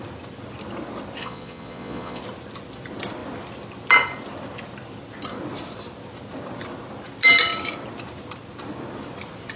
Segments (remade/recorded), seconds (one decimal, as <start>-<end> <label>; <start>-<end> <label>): 0.0-1.2 recorded; 1.2-2.2 remade; 2.2-9.6 recorded